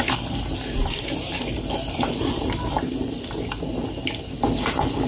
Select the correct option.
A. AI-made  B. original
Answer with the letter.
B